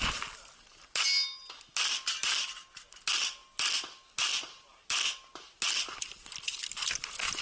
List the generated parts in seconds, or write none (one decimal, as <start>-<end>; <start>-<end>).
none